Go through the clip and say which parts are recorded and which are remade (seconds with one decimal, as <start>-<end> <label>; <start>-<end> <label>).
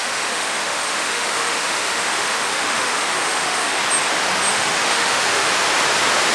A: 0.0-3.8 remade; 3.8-4.5 recorded; 4.5-5.5 remade; 5.5-6.3 recorded